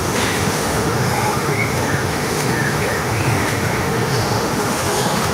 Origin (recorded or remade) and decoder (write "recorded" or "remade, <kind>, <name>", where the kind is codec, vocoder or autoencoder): remade, autoencoder, DAC-VAE